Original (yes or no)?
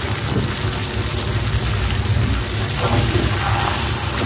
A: yes